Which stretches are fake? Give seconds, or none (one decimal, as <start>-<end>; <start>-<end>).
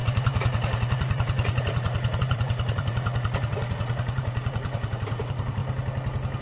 0.0-5.6